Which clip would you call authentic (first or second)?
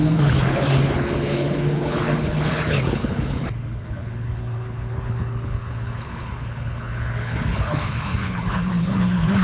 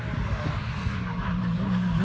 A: second